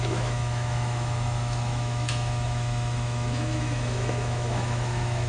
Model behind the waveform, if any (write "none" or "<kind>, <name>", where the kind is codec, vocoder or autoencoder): autoencoder, DAC-VAE